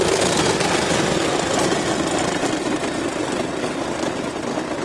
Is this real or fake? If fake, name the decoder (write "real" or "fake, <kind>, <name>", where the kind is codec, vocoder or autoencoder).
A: real